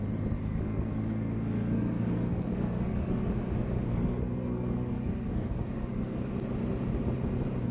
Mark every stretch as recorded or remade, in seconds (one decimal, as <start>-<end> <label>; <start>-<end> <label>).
0.0-0.4 recorded; 0.4-3.3 remade; 3.3-3.9 recorded; 3.9-6.3 remade; 6.3-7.7 recorded